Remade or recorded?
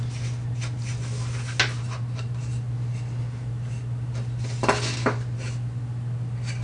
recorded